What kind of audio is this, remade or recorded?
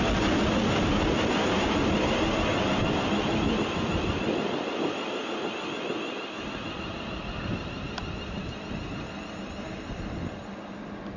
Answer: recorded